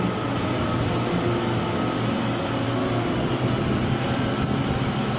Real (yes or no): yes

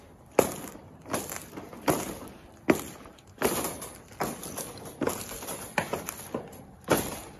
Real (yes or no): yes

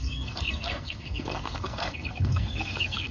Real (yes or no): no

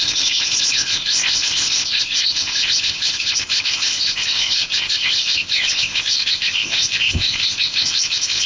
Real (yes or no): no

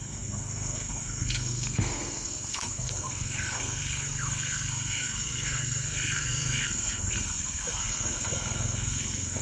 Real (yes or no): no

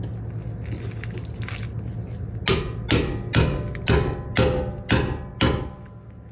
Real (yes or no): yes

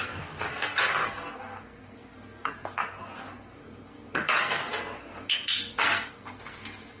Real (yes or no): no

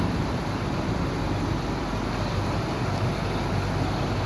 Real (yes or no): yes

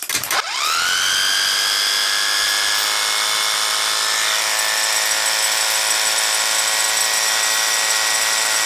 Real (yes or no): yes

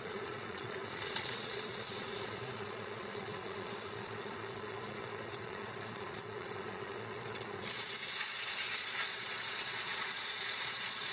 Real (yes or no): no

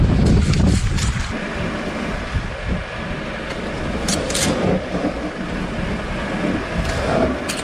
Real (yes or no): yes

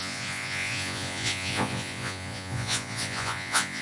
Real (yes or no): no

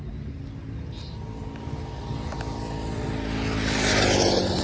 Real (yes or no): yes